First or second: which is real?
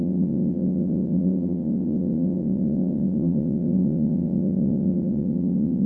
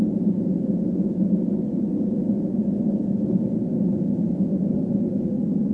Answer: second